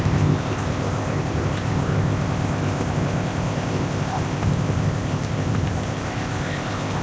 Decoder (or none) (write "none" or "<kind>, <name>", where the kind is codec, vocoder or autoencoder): codec, ZipCodec